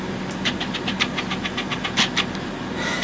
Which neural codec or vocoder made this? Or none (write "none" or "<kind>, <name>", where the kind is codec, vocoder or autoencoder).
none